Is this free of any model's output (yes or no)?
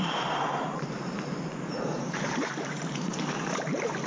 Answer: no